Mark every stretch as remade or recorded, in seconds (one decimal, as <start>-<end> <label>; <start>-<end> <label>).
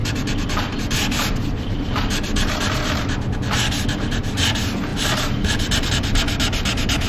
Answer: 0.0-3.0 remade; 3.0-4.9 recorded; 4.9-5.9 remade; 5.9-7.1 recorded